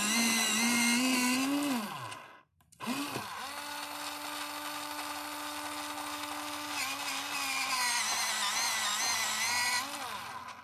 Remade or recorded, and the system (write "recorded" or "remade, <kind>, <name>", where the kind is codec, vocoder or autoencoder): recorded